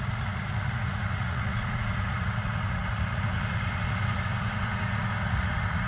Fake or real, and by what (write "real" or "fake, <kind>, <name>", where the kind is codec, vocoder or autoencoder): fake, vocoder, Vocos